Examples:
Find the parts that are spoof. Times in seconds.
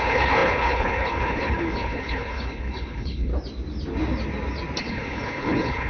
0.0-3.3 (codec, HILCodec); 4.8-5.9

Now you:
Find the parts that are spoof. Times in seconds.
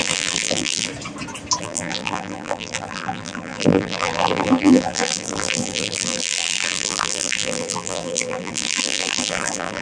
0.0-0.9 (vocoder, BigVGAN v2); 1.6-9.8